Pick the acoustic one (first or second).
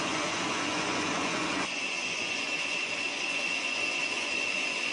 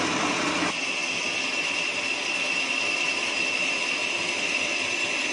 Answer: second